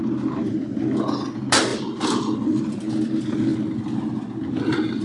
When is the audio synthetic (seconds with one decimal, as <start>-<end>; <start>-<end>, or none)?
1.7-2.9